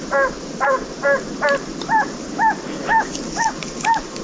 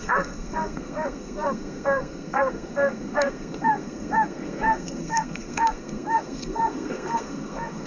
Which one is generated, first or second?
second